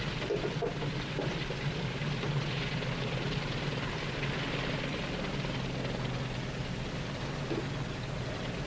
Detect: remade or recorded recorded